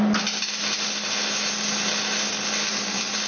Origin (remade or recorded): recorded